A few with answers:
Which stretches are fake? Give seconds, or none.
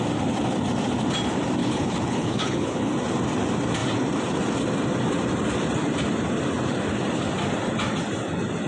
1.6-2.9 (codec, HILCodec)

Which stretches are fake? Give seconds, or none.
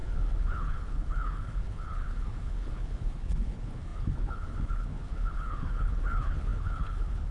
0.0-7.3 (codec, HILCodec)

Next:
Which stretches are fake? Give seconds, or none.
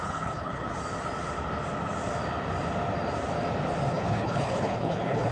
0.0-0.7 (codec, HILCodec); 3.9-5.3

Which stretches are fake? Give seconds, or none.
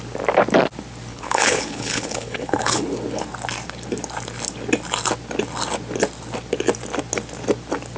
1.1-2.8 (codec, HILCodec)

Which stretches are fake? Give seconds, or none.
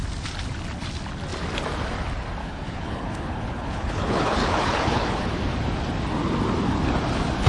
2.4-5.4 (codec, HILCodec)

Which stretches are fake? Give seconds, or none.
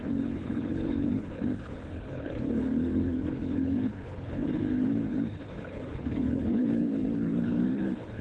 0.0-8.2 (codec, HILCodec)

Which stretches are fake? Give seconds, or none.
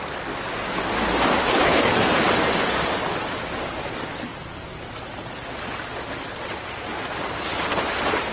1.4-2.0 (codec, HILCodec)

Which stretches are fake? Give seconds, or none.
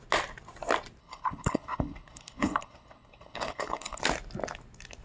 1.0-4.0 (codec, HILCodec)